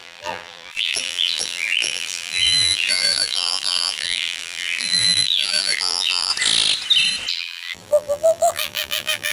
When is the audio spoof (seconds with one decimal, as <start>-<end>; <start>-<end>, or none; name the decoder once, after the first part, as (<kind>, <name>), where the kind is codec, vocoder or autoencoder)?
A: 0.0-6.3 (vocoder, BigVGAN v2); 7.3-9.3